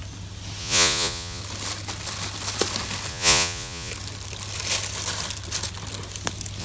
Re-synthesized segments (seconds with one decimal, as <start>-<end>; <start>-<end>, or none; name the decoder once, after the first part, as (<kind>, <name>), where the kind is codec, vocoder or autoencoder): 0.6-1.4 (vocoder, Vocos); 3.1-3.9